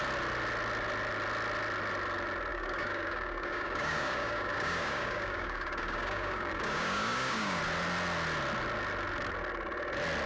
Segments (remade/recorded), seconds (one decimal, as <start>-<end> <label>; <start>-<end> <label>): 0.0-2.5 recorded; 2.5-7.6 remade; 7.6-10.3 recorded